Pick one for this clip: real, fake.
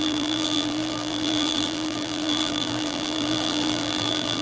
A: fake